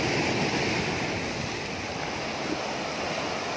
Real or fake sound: real